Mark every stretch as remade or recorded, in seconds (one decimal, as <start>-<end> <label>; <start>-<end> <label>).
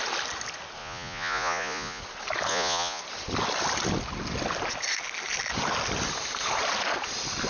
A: 0.0-0.8 recorded; 0.8-2.0 remade; 2.0-2.5 recorded; 2.5-3.0 remade; 3.0-7.5 recorded